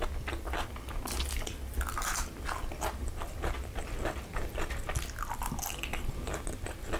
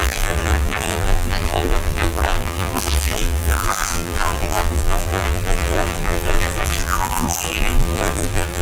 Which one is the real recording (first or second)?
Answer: first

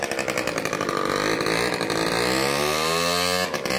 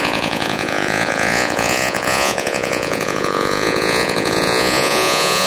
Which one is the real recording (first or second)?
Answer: first